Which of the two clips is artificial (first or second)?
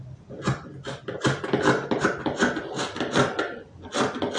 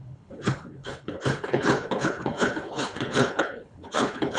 second